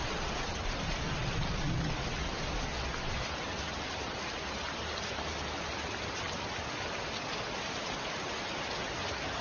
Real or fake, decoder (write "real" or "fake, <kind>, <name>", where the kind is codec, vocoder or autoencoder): real